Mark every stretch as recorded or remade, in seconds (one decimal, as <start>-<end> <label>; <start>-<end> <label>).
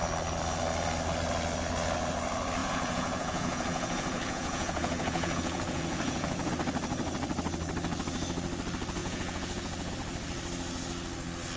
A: 0.0-2.6 recorded; 2.6-6.5 remade; 6.5-9.0 recorded; 9.0-9.9 remade; 9.9-11.6 recorded